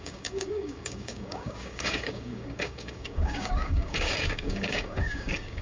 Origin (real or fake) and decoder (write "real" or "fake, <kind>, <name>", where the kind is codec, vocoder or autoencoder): fake, codec, DAC